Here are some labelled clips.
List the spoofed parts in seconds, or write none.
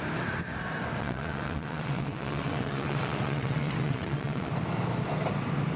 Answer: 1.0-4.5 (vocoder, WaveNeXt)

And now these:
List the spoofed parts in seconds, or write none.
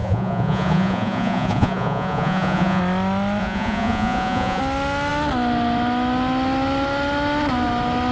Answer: 0.0-2.8 (vocoder, Vocos); 3.4-4.6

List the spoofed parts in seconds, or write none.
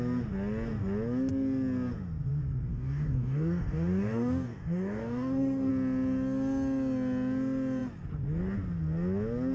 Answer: 2.7-5.7 (codec, DAC)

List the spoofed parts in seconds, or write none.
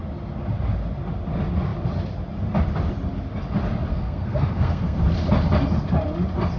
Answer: 3.9-5.0 (codec, SNAC)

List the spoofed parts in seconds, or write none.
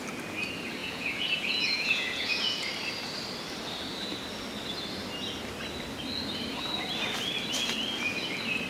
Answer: 0.8-2.7 (vocoder, Vocos)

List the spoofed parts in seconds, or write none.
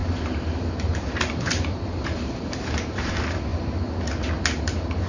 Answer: 0.0-3.1 (vocoder, BigVGAN v2)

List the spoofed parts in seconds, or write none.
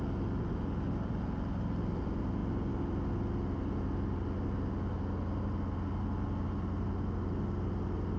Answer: none